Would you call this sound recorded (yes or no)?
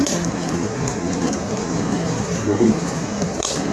no